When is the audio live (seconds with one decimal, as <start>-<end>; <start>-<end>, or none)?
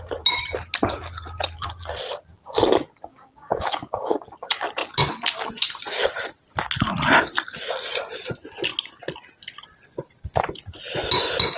0.0-3.1; 4.2-11.6